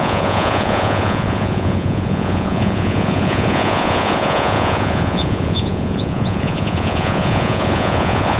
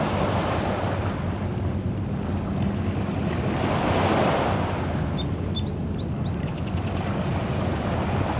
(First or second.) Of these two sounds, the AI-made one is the first